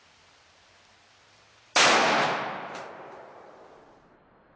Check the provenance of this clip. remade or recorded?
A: recorded